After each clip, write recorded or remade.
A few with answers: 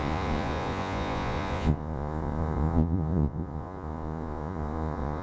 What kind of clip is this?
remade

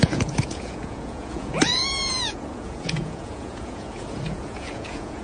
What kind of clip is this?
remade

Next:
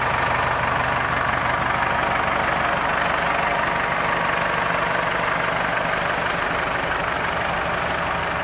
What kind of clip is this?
recorded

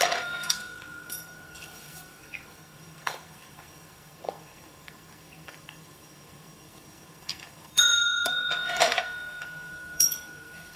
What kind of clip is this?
remade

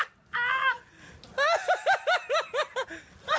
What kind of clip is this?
recorded